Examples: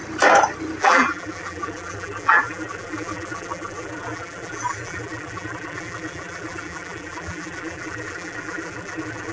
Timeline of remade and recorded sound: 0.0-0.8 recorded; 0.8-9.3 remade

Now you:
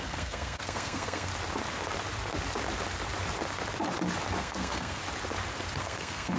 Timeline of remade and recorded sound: 0.0-1.3 remade; 1.3-4.4 recorded; 4.4-5.0 remade; 5.0-5.8 recorded; 5.8-6.4 remade

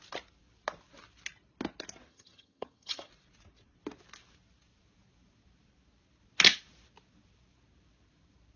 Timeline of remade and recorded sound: 0.0-2.1 recorded; 2.1-3.1 remade; 3.1-8.6 recorded

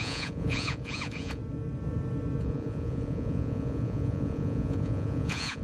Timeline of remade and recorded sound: 0.0-1.4 remade; 1.4-2.4 recorded; 2.4-5.6 remade

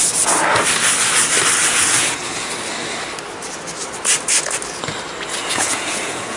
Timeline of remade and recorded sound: 0.0-1.6 recorded; 1.6-2.5 remade; 2.5-5.4 recorded; 5.4-6.4 remade

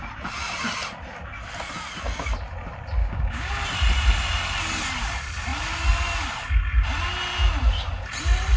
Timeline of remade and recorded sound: 0.0-3.0 recorded; 3.0-3.5 remade; 3.5-8.6 recorded

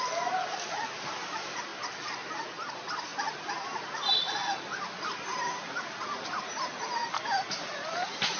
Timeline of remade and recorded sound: 0.0-8.4 recorded

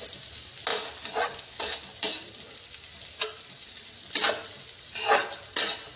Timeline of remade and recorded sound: 0.0-6.0 recorded